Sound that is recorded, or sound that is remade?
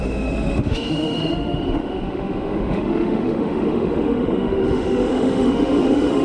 remade